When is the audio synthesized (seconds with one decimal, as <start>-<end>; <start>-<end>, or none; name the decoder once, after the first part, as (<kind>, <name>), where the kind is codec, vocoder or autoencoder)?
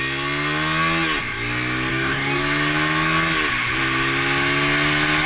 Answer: 1.9-2.4 (codec, DAC)